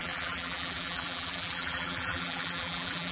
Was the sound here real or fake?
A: fake